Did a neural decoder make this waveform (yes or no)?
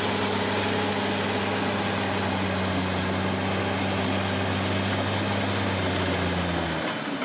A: no